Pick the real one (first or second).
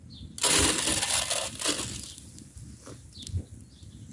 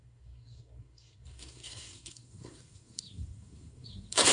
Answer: first